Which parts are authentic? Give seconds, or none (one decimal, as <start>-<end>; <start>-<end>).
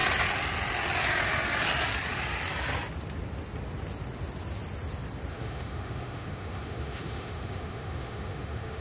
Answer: 0.0-5.3